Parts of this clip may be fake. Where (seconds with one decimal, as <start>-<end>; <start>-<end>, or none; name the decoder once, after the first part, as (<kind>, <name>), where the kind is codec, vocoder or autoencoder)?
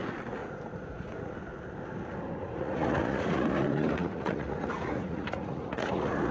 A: 0.4-1.3 (vocoder, Vocos); 2.4-6.3